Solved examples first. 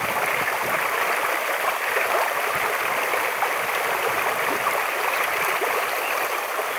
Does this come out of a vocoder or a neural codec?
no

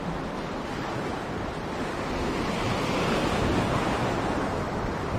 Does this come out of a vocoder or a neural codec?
no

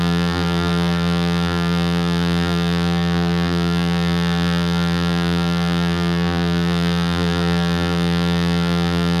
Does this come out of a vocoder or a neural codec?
yes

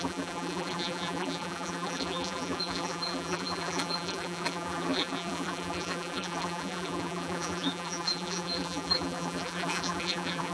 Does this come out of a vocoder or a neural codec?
yes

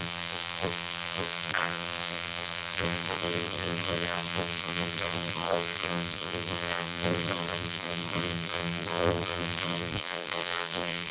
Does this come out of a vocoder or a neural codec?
yes